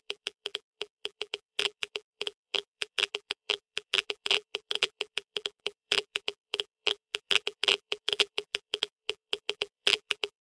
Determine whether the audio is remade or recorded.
remade